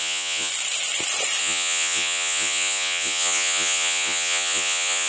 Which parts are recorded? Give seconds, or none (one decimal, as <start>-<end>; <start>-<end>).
0.5-1.4